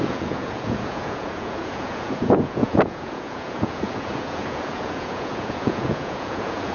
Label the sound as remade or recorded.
remade